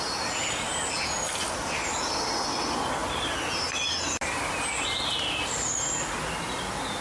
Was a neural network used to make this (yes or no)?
no